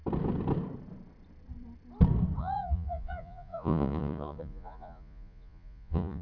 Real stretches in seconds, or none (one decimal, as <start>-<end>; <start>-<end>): 0.0-2.4